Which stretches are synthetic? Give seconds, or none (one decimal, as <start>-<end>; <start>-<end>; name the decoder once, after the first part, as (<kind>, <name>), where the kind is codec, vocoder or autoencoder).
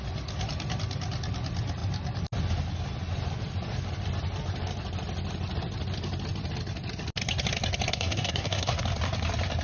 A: 7.9-8.8 (codec, SNAC)